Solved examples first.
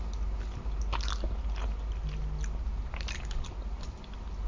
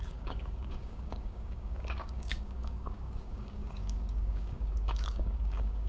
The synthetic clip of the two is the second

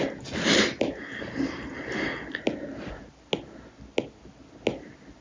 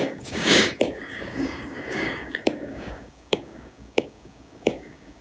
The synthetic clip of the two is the second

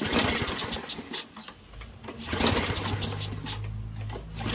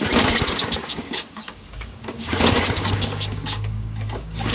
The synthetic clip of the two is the second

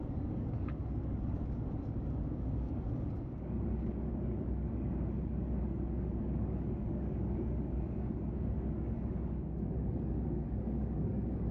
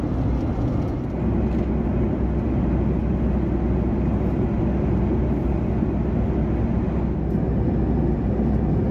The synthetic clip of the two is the first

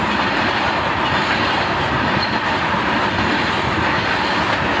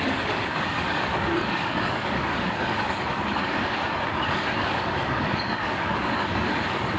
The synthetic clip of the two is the second